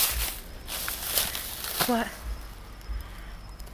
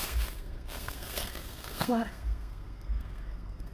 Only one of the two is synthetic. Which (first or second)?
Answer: second